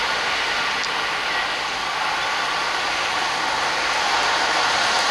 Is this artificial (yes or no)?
no